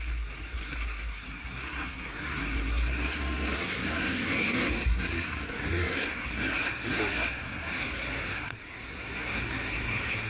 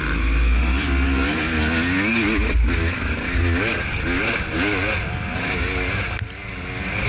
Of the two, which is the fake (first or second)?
first